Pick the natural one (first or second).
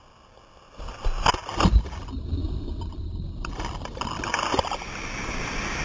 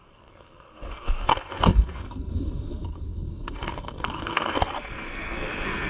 first